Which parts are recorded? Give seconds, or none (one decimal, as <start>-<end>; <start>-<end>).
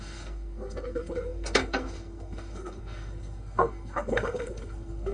none